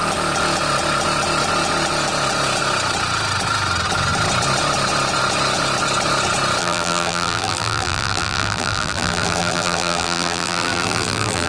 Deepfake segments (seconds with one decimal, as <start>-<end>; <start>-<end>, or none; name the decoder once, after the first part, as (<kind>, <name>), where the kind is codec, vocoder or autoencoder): 6.6-11.5 (vocoder, BigVGAN v2)

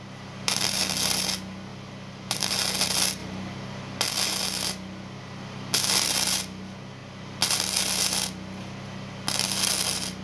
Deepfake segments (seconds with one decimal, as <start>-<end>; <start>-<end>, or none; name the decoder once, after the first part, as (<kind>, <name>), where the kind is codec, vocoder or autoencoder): 1.7-2.5 (vocoder, BigVGAN v2)